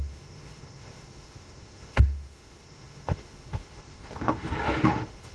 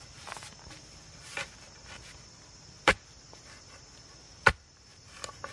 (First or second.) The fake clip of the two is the first